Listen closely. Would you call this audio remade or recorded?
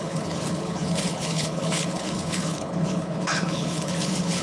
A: remade